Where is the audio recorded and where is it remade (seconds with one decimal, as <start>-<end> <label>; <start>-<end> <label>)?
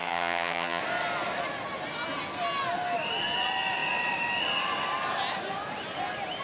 0.0-0.8 remade; 0.8-6.4 recorded